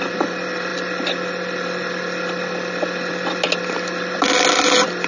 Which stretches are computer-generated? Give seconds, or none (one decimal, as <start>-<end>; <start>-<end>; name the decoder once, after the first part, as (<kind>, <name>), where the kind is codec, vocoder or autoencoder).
none